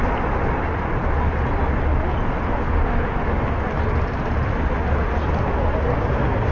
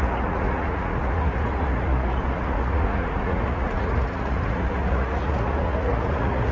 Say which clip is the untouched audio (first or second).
first